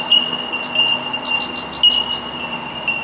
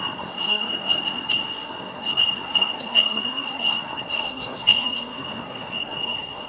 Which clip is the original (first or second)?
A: first